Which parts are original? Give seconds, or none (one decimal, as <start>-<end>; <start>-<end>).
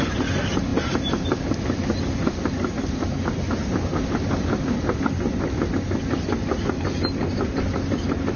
0.0-8.4